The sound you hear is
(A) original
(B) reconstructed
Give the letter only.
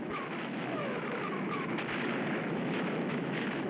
B